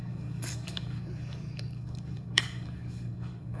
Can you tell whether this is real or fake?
fake